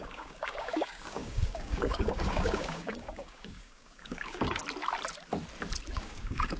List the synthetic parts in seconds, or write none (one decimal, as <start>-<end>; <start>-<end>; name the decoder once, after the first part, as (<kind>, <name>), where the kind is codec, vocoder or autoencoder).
0.0-4.6 (codec, DAC); 6.0-6.6